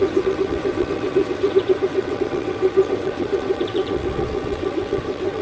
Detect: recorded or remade remade